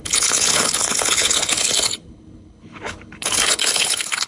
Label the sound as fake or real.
fake